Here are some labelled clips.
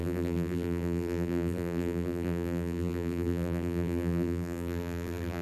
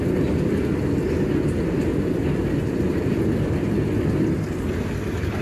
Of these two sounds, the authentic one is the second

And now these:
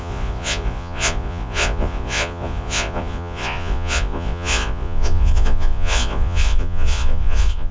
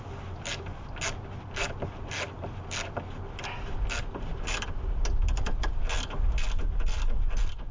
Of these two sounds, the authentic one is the second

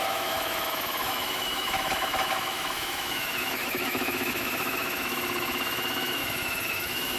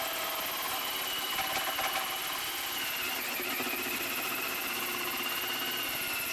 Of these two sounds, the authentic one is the second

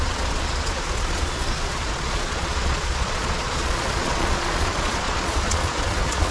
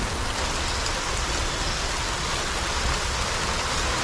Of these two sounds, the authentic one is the second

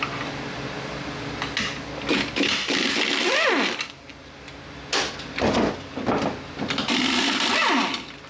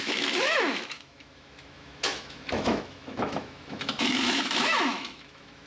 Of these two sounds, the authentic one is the first